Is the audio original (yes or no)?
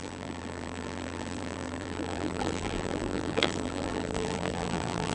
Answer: no